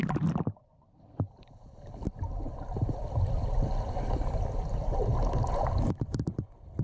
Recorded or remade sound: remade